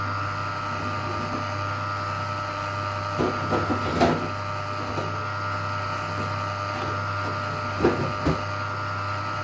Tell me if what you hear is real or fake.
real